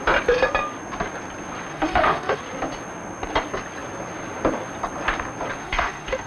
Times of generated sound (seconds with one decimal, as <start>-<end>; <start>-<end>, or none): 1.7-2.4; 5.6-6.3